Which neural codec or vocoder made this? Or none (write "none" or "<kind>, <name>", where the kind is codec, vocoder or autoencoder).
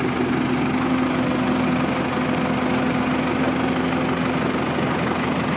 none